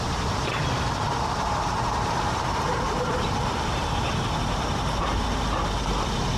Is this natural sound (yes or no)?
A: yes